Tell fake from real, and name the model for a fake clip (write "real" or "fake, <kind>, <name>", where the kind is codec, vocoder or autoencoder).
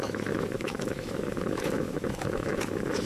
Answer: fake, autoencoder, DAC-VAE